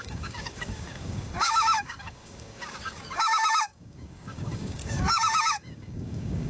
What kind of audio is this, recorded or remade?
remade